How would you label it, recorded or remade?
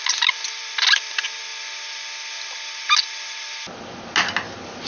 recorded